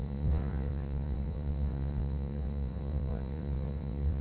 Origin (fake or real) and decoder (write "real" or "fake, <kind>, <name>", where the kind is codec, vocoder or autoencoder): fake, vocoder, WaveNeXt